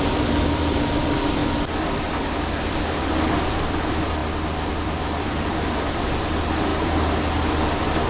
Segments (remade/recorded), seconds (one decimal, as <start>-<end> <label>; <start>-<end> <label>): 0.0-1.4 remade; 1.4-2.0 recorded; 2.0-4.2 remade; 4.2-4.7 recorded; 4.7-8.1 remade